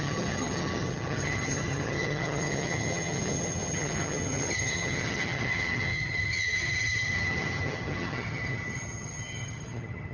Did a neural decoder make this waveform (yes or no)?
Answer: yes